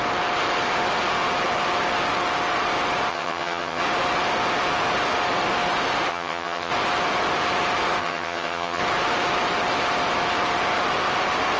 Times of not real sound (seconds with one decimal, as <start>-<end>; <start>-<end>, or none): 3.1-3.8; 6.1-6.7; 8.0-8.8